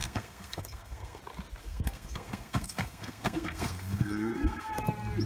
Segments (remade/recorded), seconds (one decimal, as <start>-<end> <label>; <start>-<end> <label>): 0.0-1.2 remade; 1.2-1.6 recorded; 1.6-4.8 remade; 4.8-5.3 recorded